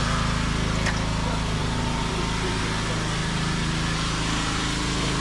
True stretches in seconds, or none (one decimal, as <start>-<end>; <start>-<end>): 0.0-1.6; 2.1-3.2; 4.6-5.2